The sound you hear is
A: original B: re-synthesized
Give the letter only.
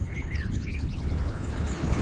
B